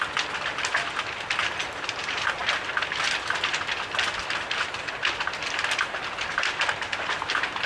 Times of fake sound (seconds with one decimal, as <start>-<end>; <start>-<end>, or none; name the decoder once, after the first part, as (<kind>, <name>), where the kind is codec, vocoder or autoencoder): none